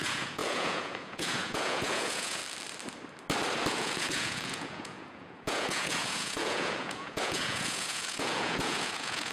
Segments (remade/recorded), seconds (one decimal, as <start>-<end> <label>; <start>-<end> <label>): 0.0-2.4 remade; 2.4-3.7 recorded; 3.7-9.3 remade